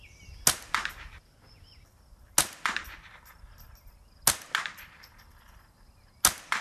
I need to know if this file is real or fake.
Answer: real